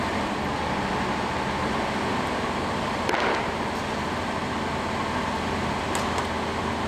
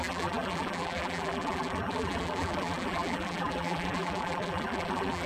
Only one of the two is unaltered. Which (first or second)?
first